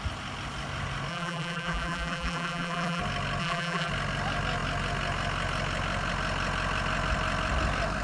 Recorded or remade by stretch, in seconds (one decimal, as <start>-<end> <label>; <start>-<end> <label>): 0.0-1.1 recorded; 1.1-3.0 remade; 3.0-3.4 recorded; 3.4-3.9 remade; 3.9-8.0 recorded